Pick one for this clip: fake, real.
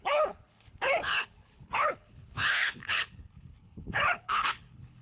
fake